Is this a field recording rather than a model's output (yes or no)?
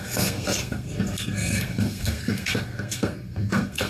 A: no